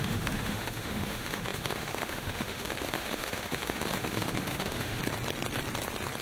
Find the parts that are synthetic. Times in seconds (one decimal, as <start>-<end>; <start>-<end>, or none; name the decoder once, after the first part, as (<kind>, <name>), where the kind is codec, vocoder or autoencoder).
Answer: 0.0-5.0 (autoencoder, DAC-VAE)